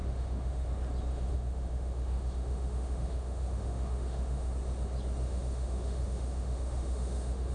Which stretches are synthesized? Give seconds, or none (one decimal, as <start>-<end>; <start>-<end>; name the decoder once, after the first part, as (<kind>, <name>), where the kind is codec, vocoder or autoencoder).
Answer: 0.0-0.7 (autoencoder, DAC-VAE); 1.1-4.5; 5.2-7.5